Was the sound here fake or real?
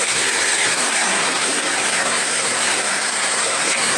fake